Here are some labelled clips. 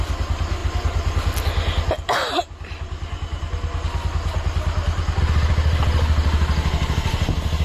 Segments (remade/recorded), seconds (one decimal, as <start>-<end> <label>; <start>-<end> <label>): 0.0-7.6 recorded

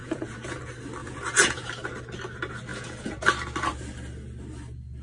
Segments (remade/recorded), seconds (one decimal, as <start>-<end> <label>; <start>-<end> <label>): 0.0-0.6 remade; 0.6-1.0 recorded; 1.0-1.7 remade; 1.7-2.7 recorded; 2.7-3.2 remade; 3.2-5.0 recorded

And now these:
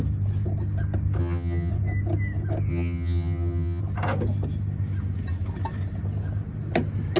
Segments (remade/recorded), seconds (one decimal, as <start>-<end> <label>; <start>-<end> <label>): 0.0-1.2 recorded; 1.2-1.7 remade; 1.7-2.7 recorded; 2.7-3.8 remade; 3.8-7.2 recorded

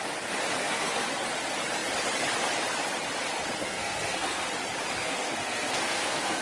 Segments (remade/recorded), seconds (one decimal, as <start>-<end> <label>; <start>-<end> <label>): 0.0-0.6 recorded; 0.6-1.1 remade; 1.1-3.6 recorded; 3.6-4.5 remade; 4.5-5.0 recorded; 5.0-6.4 remade

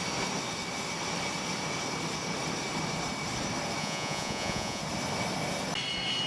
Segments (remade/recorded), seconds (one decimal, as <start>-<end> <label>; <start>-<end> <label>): 0.0-3.8 recorded; 3.8-4.8 remade; 4.8-6.3 recorded

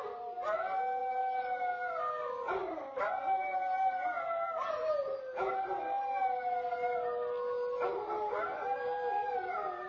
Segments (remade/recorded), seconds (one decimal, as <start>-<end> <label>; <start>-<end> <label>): 0.0-9.9 recorded

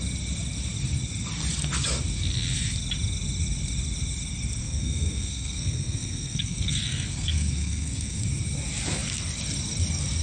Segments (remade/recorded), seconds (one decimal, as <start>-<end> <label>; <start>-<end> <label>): 0.0-4.6 recorded; 4.6-8.2 remade; 8.2-10.2 recorded

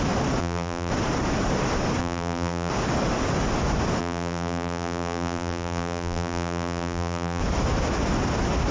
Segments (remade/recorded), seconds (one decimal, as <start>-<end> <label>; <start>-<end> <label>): 0.0-0.4 recorded; 0.4-0.9 remade; 0.9-2.0 recorded; 2.0-2.7 remade; 2.7-4.0 recorded; 4.0-7.4 remade; 7.4-8.7 recorded